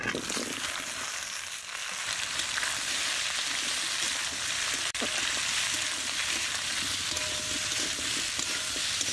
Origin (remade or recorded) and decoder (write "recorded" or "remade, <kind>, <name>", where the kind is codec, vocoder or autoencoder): remade, vocoder, BigVGAN v2